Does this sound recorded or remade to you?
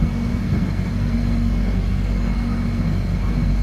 remade